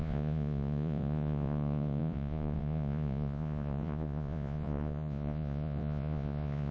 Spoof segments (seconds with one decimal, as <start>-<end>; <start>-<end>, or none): 0.0-6.7